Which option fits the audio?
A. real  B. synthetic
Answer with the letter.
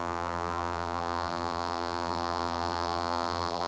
B